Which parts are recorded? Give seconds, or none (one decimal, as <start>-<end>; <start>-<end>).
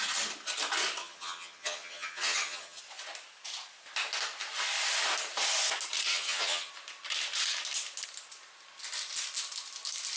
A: 0.0-1.0; 2.8-6.1; 6.7-10.2